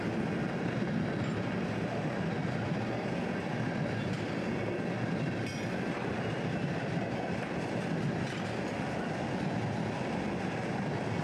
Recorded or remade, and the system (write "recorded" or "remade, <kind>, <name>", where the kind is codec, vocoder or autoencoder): recorded